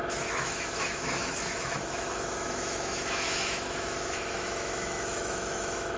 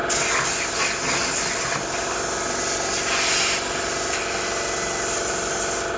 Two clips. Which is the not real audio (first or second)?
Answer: first